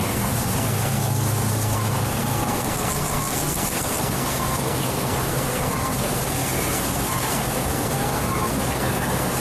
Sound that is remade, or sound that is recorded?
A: remade